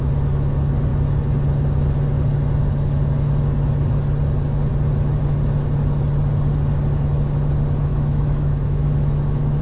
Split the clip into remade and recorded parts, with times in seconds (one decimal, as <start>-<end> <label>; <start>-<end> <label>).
0.0-7.9 recorded; 7.9-9.6 remade